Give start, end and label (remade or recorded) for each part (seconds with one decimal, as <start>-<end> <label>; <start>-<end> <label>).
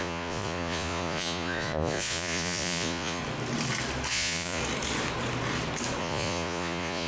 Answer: 0.0-3.2 remade; 3.2-4.1 recorded; 4.1-4.6 remade; 4.6-6.0 recorded; 6.0-7.1 remade